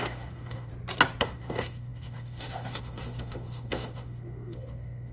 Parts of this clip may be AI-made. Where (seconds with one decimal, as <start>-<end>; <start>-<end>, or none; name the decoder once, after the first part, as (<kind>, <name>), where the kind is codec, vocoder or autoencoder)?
0.0-0.7 (autoencoder, DAC-VAE); 1.2-5.1